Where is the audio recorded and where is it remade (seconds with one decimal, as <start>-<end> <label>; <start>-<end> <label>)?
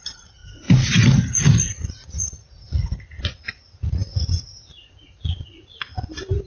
0.0-5.9 remade; 5.9-6.5 recorded